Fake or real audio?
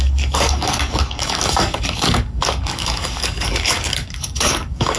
fake